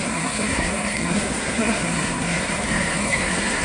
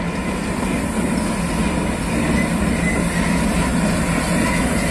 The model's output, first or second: first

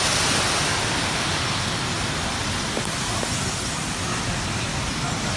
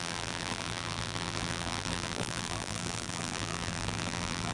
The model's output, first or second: second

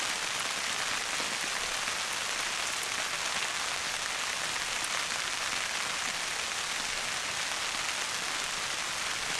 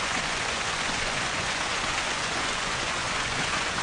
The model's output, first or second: second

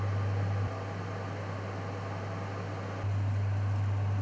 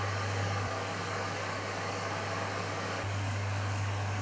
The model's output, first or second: second